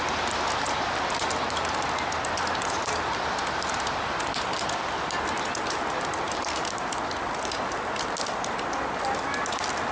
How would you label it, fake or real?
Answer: real